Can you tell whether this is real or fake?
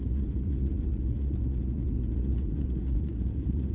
fake